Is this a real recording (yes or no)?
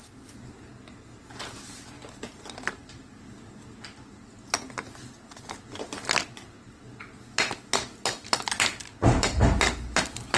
yes